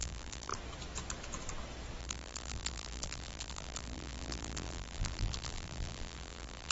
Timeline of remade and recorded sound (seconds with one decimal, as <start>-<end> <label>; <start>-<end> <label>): 0.0-0.5 remade; 0.5-2.0 recorded; 2.0-6.7 remade